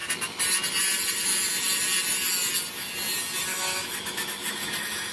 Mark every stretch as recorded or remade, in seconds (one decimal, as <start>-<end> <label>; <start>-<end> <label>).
0.0-3.5 recorded; 3.5-5.1 remade